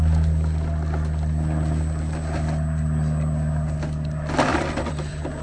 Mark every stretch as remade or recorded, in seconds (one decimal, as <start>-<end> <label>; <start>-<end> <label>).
0.0-4.5 recorded; 4.5-5.0 remade; 5.0-5.4 recorded